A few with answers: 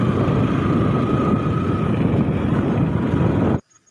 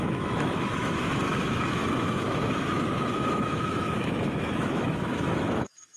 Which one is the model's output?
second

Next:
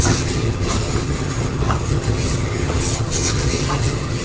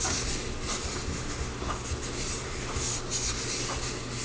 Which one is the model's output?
first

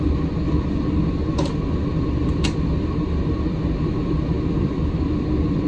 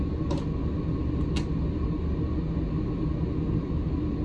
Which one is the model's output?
first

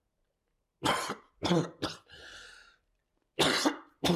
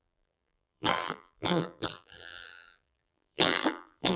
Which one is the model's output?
second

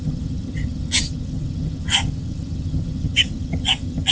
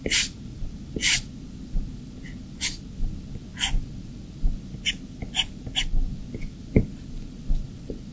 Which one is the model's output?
first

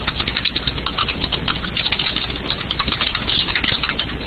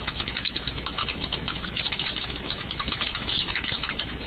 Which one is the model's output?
second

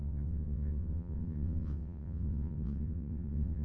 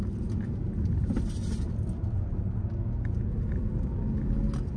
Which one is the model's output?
first